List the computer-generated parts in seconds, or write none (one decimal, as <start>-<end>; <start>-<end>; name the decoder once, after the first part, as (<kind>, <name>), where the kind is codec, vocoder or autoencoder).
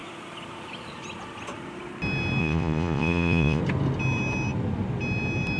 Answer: 2.4-3.6 (vocoder, Vocos)